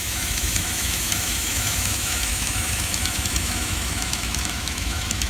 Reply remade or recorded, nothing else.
remade